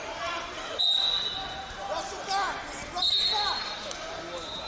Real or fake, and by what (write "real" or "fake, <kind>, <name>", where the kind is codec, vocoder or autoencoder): fake, vocoder, BigVGAN v2